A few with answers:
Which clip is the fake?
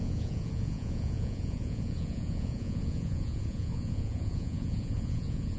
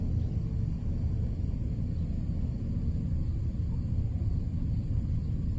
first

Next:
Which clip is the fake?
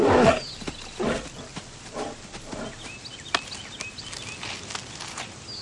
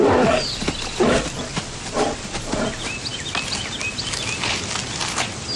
second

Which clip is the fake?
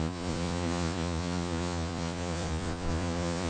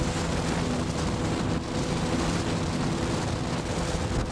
first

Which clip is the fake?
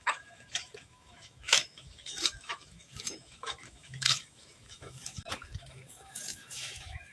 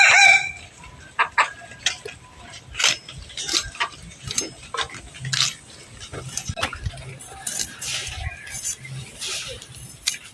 first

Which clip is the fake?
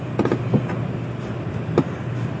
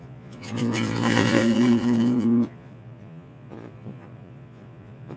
second